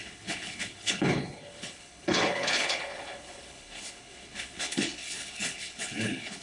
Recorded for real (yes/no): no